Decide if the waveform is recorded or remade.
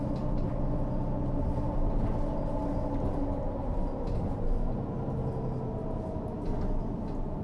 recorded